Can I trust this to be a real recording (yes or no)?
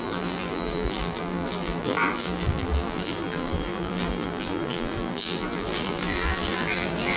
no